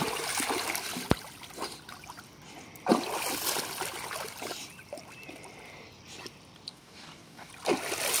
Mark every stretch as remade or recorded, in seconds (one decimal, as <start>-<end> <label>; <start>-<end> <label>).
0.0-6.7 recorded; 6.7-7.5 remade; 7.5-8.2 recorded